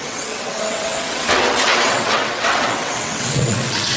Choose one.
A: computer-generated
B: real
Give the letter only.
A